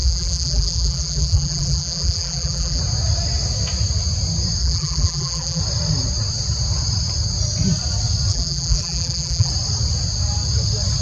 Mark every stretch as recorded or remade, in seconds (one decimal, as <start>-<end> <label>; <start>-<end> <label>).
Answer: 0.0-2.8 remade; 2.8-4.6 recorded; 4.6-5.6 remade; 5.6-8.3 recorded; 8.3-9.5 remade; 9.5-11.0 recorded